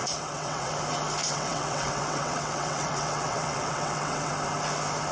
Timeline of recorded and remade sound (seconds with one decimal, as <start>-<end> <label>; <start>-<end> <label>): 0.0-0.7 remade; 0.7-1.2 recorded; 1.2-4.3 remade; 4.3-5.1 recorded